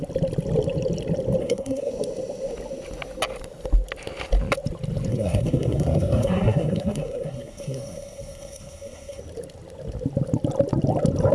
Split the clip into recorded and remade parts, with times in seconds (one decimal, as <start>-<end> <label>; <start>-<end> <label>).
0.0-1.4 recorded; 1.4-1.9 remade; 1.9-5.1 recorded; 5.1-9.2 remade; 9.2-11.3 recorded